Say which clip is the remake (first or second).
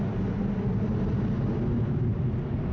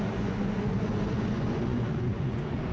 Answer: second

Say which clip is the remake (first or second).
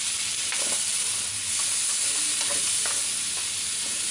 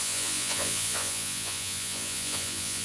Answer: second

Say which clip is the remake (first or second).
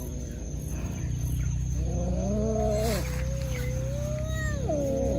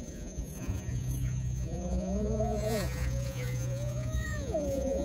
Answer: second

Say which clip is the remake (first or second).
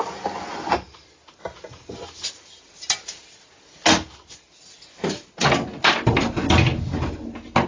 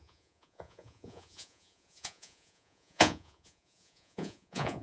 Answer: second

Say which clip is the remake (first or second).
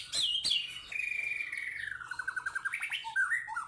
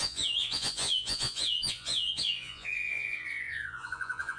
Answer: second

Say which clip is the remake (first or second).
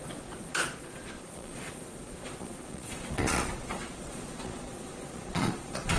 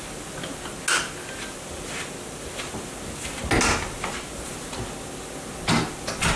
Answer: first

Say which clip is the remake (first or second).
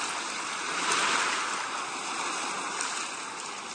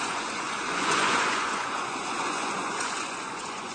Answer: second